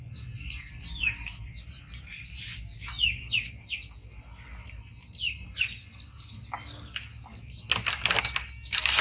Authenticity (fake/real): real